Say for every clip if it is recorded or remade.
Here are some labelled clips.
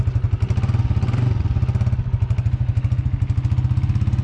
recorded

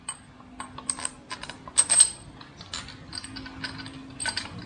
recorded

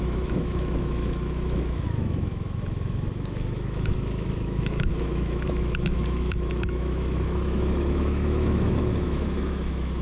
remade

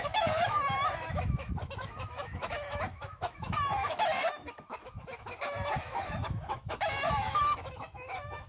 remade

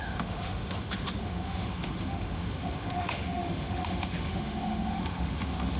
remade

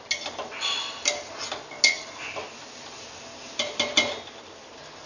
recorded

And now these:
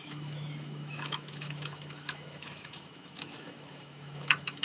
remade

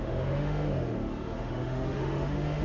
remade